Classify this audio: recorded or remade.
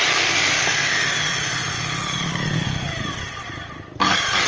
recorded